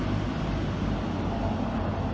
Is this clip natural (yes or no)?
yes